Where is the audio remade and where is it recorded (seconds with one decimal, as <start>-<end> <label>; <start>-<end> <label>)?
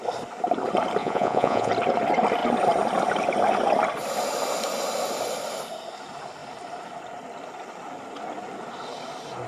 0.0-1.0 recorded; 1.0-1.7 remade; 1.7-9.5 recorded